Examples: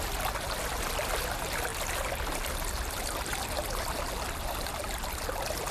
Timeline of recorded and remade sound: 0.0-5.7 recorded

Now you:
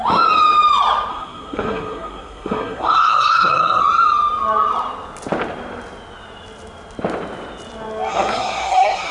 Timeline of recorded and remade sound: 0.0-1.1 recorded; 1.1-3.8 remade; 3.8-8.1 recorded; 8.1-9.1 remade

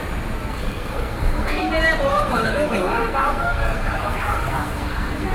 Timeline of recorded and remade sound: 0.0-0.5 recorded; 0.5-1.7 remade; 1.7-2.1 recorded; 2.1-5.3 remade